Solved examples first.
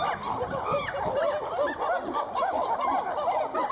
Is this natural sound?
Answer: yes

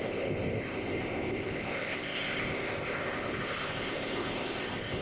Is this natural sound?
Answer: no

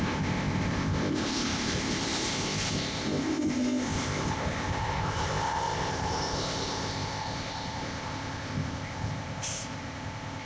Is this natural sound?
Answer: no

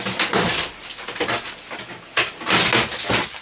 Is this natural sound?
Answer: yes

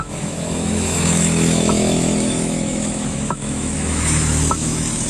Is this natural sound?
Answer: no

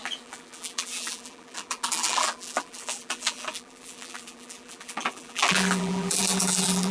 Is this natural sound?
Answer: no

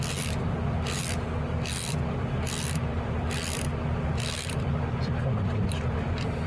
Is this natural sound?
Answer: no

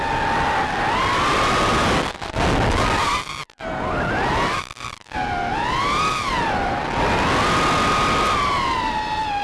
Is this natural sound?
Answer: yes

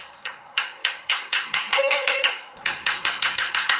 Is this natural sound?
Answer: no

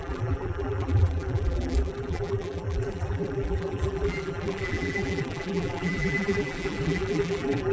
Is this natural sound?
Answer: no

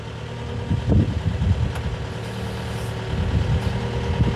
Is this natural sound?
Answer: yes